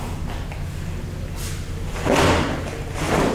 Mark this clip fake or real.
fake